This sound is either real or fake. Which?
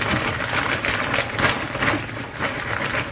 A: real